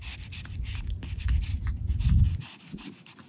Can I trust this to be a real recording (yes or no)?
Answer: yes